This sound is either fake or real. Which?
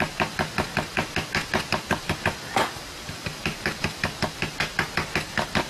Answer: real